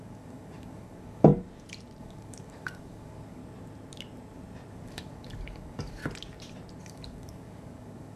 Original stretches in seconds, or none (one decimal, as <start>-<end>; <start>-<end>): 1.3-2.0; 3.4-4.7; 6.0-6.8

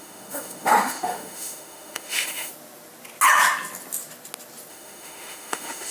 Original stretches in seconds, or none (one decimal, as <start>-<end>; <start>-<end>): 2.5-4.7

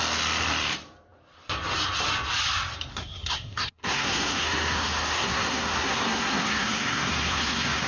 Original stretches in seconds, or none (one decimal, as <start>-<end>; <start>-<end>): 0.0-2.9

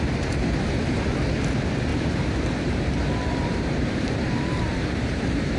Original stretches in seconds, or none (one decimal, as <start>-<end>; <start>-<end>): 0.0-1.9

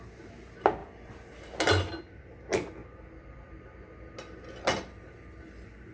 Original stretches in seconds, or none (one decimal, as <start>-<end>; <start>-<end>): 0.0-5.9